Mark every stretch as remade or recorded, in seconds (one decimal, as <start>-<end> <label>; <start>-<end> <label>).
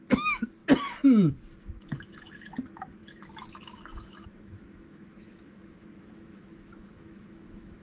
0.0-0.6 remade; 0.6-1.6 recorded; 1.6-7.8 remade